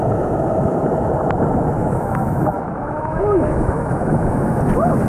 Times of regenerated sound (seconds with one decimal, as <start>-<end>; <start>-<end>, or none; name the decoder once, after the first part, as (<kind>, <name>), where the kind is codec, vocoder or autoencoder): 1.8-4.6 (autoencoder, DAC-VAE)

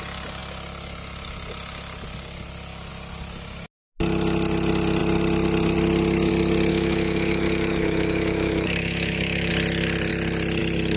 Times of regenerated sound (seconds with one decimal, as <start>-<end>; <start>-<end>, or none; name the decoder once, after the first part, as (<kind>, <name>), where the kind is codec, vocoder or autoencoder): 6.7-9.5 (autoencoder, DAC-VAE)

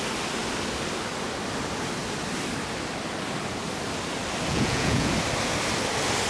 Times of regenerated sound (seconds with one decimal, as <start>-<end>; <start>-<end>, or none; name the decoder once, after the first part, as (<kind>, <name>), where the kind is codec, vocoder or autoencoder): 4.5-5.1 (vocoder, Vocos)